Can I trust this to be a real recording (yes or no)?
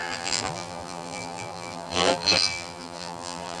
no